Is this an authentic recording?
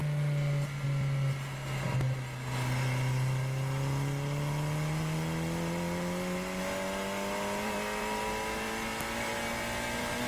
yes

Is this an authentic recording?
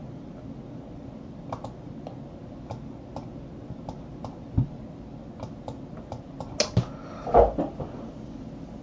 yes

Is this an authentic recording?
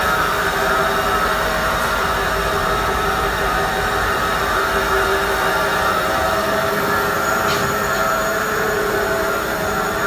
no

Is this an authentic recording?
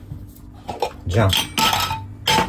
yes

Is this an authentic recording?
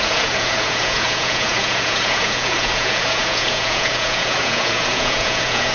no